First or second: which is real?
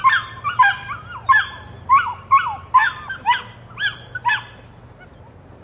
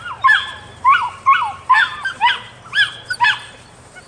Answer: first